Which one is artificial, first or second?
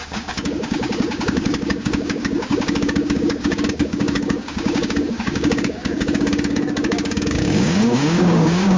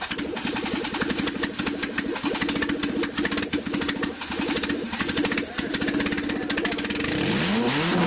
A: first